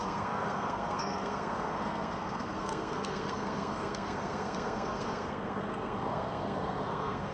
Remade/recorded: remade